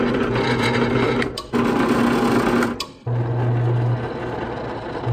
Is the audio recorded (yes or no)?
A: yes